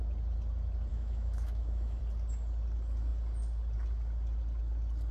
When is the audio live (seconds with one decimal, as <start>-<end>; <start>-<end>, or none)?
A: 0.0-0.9; 2.0-5.1